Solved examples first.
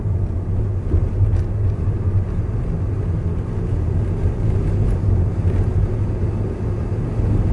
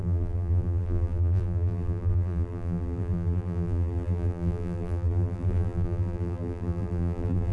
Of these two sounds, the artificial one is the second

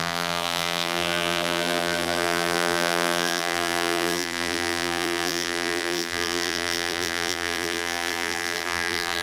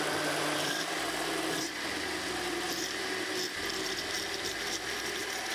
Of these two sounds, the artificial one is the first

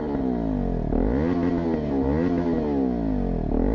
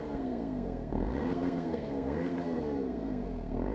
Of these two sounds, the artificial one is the second